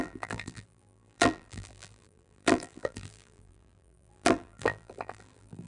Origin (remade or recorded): remade